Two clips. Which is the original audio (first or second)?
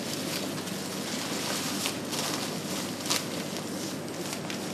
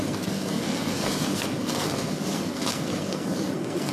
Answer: first